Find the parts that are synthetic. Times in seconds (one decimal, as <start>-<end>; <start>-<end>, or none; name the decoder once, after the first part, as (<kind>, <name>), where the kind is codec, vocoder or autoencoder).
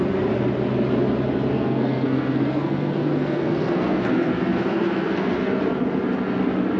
1.5-5.6 (codec, SNAC)